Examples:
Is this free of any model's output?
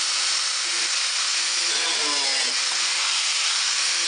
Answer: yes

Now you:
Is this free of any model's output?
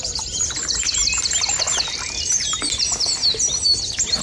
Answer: yes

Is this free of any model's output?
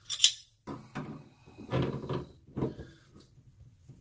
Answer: yes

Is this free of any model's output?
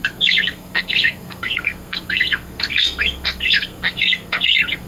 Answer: no